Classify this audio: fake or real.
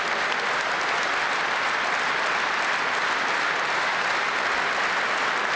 real